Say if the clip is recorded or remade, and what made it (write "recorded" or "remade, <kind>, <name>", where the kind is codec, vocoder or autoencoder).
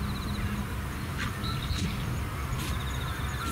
recorded